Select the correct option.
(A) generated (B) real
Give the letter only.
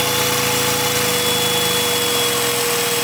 B